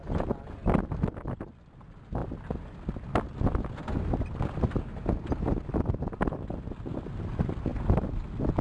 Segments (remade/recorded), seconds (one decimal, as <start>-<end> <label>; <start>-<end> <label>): 0.0-8.6 recorded